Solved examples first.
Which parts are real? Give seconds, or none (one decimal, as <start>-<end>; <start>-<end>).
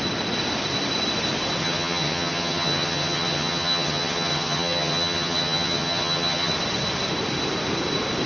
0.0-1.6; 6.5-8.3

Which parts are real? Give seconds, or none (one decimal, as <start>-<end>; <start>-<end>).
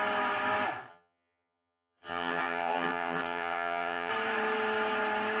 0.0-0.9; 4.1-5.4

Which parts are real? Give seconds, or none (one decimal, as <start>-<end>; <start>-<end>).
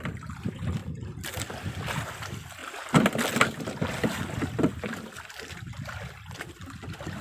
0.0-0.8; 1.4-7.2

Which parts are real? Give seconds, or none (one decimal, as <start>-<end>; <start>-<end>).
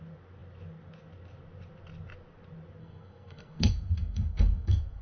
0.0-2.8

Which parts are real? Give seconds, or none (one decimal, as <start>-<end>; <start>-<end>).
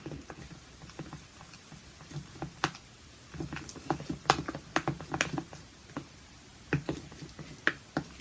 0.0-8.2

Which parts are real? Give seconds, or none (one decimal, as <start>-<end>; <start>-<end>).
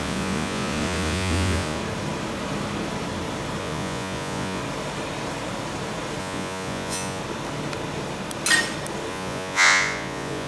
1.8-3.6; 4.6-6.2; 7.2-9.1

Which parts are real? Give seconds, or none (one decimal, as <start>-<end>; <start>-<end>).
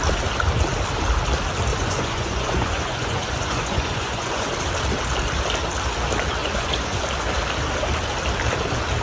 0.0-1.7; 4.5-6.4; 7.0-9.0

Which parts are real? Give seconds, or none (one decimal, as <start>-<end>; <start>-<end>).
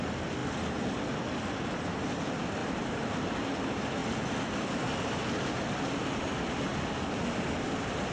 0.0-2.6; 3.3-8.1